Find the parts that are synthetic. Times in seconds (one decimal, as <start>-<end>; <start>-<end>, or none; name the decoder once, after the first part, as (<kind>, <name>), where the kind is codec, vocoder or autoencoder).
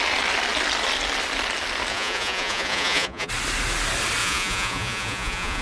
1.9-3.3 (vocoder, Vocos); 4.2-5.6